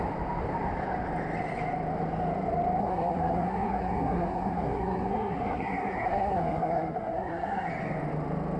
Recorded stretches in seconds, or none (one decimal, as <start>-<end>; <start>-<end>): 0.0-2.8; 7.7-8.6